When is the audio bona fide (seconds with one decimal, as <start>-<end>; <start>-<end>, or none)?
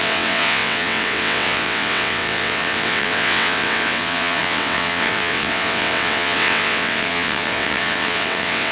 none